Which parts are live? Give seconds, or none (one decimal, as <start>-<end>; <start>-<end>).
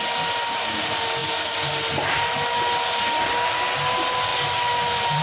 0.0-5.2